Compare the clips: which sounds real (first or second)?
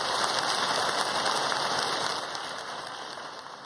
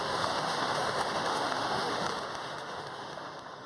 first